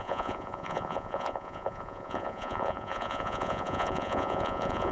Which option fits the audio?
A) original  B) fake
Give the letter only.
B